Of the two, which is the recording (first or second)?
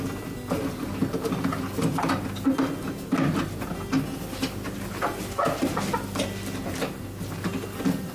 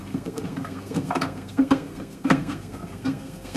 first